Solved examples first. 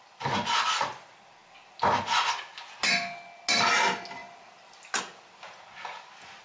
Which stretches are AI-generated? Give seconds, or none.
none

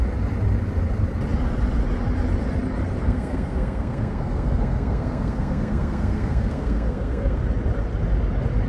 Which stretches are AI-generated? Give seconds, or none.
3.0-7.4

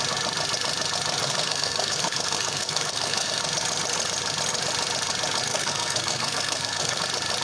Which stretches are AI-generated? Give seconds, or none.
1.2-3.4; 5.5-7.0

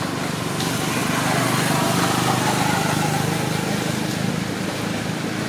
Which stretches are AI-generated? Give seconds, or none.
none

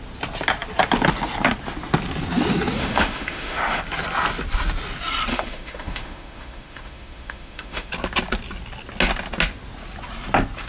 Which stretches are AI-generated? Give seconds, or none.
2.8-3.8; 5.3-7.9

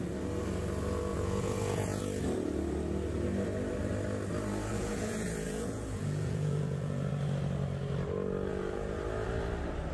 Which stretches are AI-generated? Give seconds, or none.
1.1-2.0; 4.7-7.1; 8.5-9.0